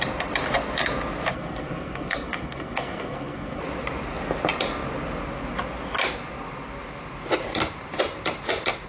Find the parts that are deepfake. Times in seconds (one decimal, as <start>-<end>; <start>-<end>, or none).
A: 1.3-3.6